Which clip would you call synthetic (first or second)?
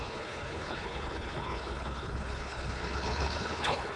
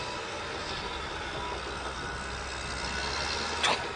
first